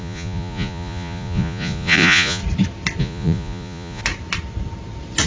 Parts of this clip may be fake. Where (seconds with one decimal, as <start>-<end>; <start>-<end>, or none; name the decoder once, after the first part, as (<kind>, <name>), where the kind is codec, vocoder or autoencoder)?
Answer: 0.0-2.4 (vocoder, Vocos); 3.0-4.0